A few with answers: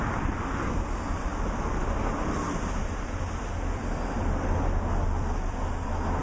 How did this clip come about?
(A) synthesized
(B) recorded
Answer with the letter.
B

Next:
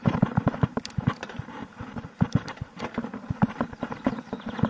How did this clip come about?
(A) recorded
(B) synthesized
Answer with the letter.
B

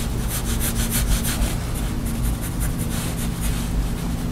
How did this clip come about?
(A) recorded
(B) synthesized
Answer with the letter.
A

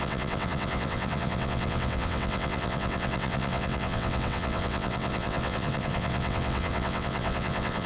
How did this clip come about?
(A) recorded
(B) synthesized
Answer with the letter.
B